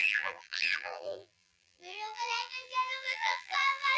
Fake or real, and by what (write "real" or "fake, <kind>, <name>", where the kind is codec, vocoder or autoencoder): fake, vocoder, BigVGAN v2